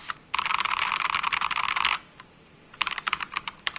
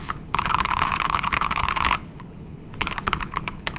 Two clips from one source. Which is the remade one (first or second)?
second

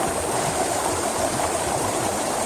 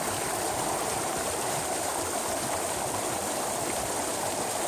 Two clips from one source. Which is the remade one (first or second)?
first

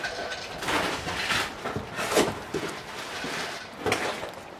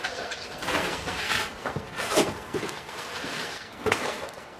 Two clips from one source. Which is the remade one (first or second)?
second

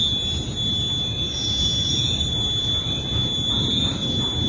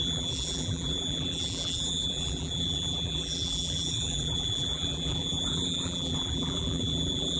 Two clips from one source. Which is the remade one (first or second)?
second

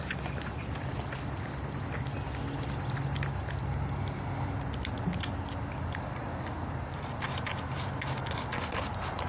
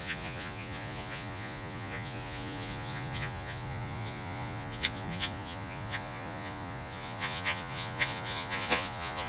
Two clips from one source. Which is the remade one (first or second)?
second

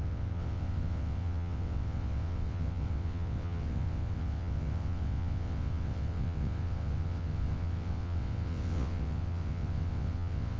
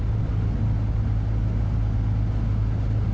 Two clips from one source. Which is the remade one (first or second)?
first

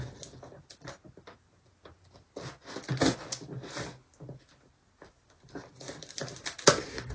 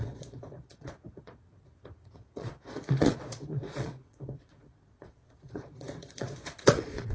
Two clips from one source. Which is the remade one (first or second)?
second